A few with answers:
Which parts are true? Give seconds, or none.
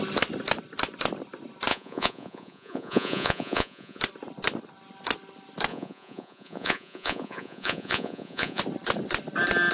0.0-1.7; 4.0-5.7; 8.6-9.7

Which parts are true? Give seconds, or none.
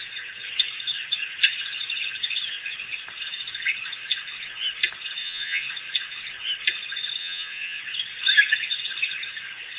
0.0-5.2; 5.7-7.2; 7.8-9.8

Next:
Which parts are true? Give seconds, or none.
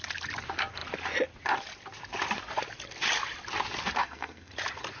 0.0-4.0; 4.5-5.0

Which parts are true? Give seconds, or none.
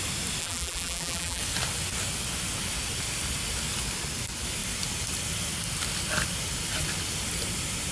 0.0-0.4; 1.4-7.9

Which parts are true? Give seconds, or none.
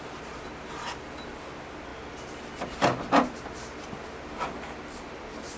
0.0-5.6